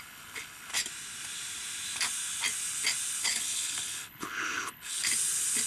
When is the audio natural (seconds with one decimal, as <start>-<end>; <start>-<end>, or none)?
0.7-3.2; 5.0-5.7